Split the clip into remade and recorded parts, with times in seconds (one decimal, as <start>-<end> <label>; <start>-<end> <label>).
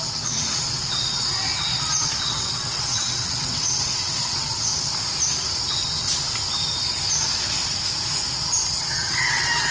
0.0-1.5 remade; 1.5-2.3 recorded; 2.3-4.7 remade; 4.7-8.8 recorded; 8.8-9.7 remade